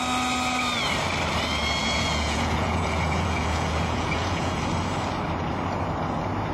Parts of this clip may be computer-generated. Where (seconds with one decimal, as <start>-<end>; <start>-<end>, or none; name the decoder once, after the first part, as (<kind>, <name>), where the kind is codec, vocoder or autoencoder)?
1.8-4.6 (vocoder, Vocos)